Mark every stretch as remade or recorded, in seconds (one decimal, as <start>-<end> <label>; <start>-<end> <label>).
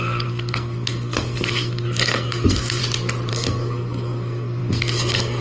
0.0-2.8 remade; 2.8-3.3 recorded; 3.3-5.4 remade